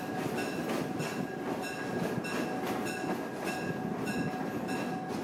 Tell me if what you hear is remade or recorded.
recorded